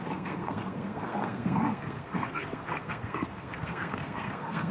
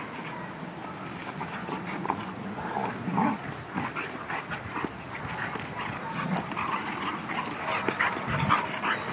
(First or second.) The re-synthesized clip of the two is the first